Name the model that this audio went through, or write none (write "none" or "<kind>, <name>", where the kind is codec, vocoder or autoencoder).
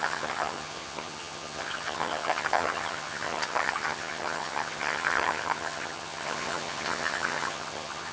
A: vocoder, HiFi-GAN